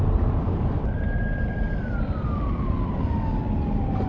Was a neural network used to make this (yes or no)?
no